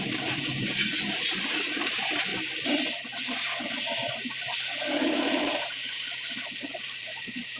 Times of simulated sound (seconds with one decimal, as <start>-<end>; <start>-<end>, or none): 0.0-2.3; 6.8-7.6